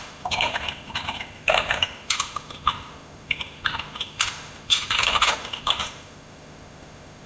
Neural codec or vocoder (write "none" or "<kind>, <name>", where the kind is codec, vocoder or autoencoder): autoencoder, DAC-VAE